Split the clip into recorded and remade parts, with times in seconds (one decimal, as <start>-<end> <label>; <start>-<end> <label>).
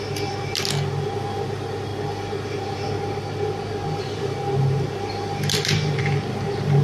0.0-6.8 recorded